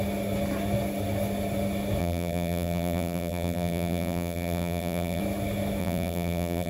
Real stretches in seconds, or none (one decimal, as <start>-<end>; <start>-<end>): 0.0-2.0; 5.2-5.8